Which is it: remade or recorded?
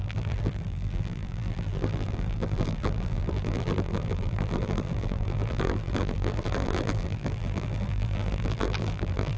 remade